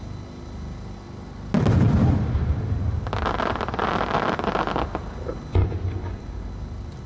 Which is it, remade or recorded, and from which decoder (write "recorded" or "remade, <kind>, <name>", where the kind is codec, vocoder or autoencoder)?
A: recorded